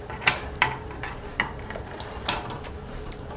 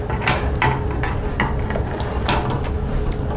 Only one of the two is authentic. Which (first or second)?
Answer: second